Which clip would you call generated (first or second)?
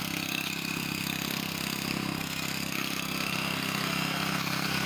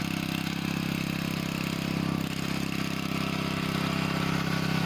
first